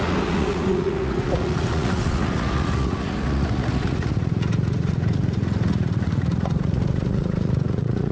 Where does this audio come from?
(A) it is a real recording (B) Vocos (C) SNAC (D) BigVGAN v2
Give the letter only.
B